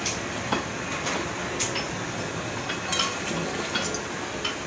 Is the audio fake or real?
real